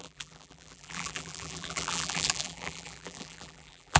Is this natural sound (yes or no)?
no